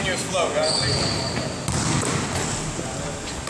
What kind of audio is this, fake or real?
real